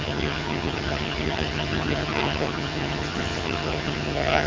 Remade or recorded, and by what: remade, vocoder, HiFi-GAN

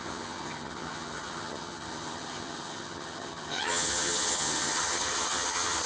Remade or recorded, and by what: remade, vocoder, HiFi-GAN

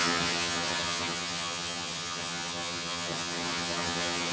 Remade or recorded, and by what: remade, vocoder, HiFi-GAN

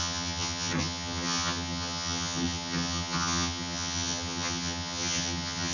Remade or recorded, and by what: remade, vocoder, HiFi-GAN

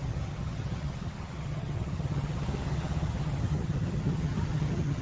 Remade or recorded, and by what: remade, vocoder, HiFi-GAN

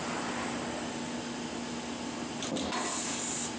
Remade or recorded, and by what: recorded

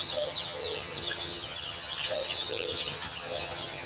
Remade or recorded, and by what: remade, vocoder, HiFi-GAN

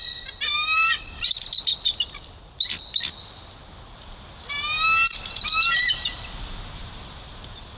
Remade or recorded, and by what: recorded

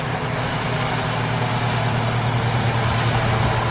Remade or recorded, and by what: recorded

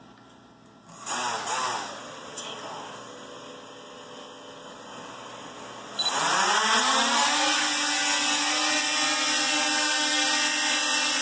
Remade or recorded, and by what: recorded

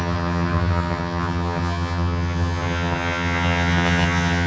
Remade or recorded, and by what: remade, vocoder, HiFi-GAN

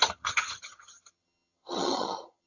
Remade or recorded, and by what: remade, vocoder, HiFi-GAN